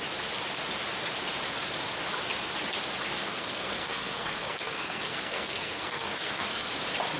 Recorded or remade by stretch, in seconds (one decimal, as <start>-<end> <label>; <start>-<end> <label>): 0.0-3.2 recorded; 3.2-6.7 remade; 6.7-7.2 recorded